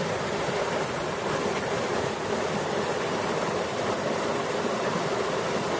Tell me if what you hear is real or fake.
real